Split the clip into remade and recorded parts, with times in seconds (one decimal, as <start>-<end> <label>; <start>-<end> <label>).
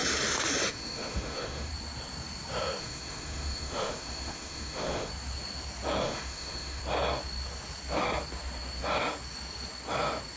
0.0-0.7 recorded; 0.7-1.7 remade; 1.7-2.8 recorded; 2.8-5.1 remade; 5.1-6.0 recorded; 6.0-6.8 remade; 6.8-10.4 recorded